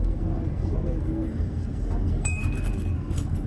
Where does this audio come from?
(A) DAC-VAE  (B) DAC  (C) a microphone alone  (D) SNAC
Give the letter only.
D